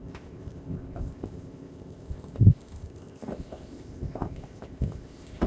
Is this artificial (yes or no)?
yes